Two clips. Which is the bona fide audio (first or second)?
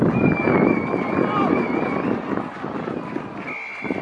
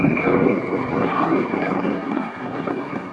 first